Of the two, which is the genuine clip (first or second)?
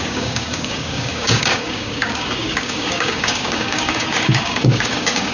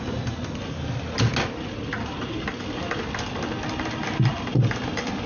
second